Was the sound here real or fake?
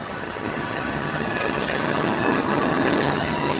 fake